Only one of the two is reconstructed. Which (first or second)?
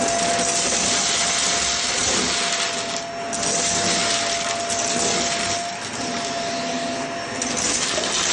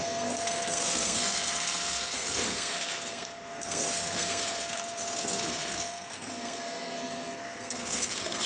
second